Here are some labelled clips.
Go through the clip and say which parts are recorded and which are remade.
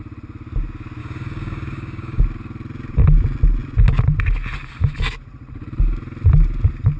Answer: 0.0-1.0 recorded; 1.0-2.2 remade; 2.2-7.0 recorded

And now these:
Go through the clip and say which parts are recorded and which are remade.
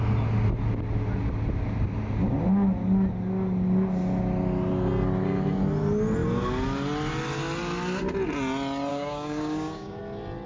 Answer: 0.0-8.9 recorded; 8.9-10.0 remade; 10.0-10.5 recorded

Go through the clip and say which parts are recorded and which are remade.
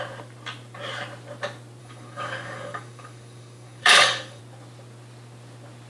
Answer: 0.0-1.8 recorded; 1.8-4.4 remade; 4.4-5.9 recorded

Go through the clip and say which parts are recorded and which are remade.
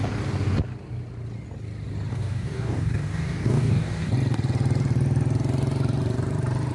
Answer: 0.0-2.1 recorded; 2.1-4.1 remade; 4.1-6.7 recorded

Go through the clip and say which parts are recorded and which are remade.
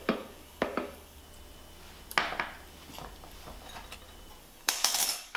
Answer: 0.0-1.2 remade; 1.2-4.4 recorded; 4.4-5.4 remade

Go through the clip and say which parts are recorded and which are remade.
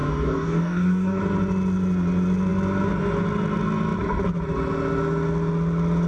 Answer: 0.0-1.2 remade; 1.2-6.1 recorded